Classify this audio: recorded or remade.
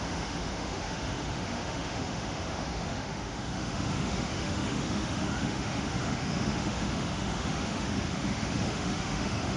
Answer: remade